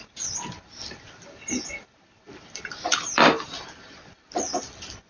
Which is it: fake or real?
fake